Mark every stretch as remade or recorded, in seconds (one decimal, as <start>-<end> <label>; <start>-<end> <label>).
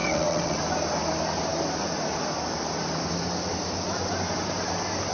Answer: 0.0-0.6 remade; 0.6-5.1 recorded